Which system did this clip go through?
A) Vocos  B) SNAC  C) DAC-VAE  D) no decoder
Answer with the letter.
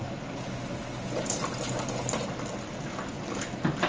D